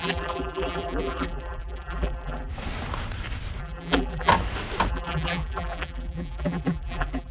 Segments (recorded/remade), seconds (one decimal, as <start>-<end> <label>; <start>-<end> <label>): 0.0-2.5 remade; 2.5-3.6 recorded; 3.6-4.3 remade; 4.3-4.9 recorded; 4.9-7.3 remade